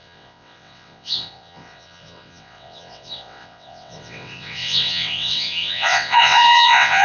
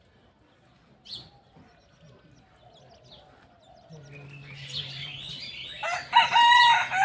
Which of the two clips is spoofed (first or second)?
first